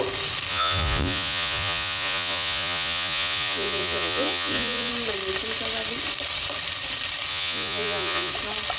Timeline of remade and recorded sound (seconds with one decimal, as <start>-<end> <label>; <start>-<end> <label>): 0.0-0.5 recorded; 0.5-4.9 remade; 4.9-7.3 recorded; 7.3-8.3 remade; 8.3-8.8 recorded